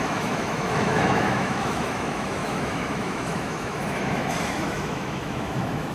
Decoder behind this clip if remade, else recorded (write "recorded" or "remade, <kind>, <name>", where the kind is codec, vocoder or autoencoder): remade, autoencoder, DAC-VAE